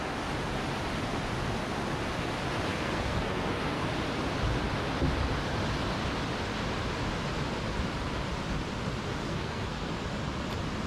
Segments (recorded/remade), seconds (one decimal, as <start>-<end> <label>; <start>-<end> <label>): 0.0-2.7 recorded; 2.7-3.9 remade; 3.9-9.2 recorded; 9.2-9.9 remade; 9.9-10.9 recorded